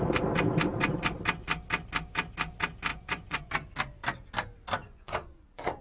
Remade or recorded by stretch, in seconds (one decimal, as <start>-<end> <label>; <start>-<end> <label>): 0.0-2.9 recorded; 2.9-3.5 remade; 3.5-4.8 recorded; 4.8-5.8 remade